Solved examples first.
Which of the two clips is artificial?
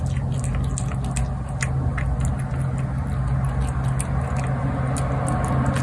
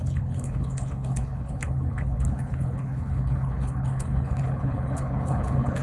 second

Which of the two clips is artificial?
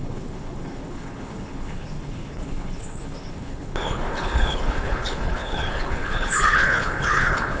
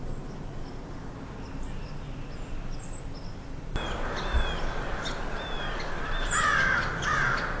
first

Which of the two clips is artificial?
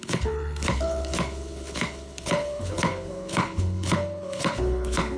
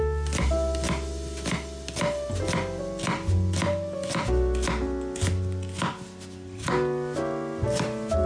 first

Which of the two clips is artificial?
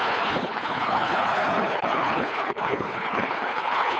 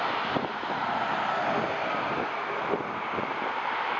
first